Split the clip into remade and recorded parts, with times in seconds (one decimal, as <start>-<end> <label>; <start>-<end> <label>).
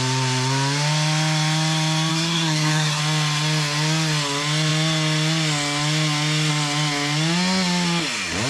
0.0-2.1 recorded; 2.1-3.0 remade; 3.0-8.5 recorded